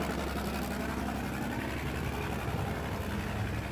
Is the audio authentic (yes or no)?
yes